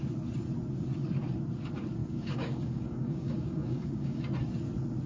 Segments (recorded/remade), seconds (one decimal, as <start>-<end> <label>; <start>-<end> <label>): 0.0-2.0 recorded; 2.0-4.2 remade; 4.2-5.1 recorded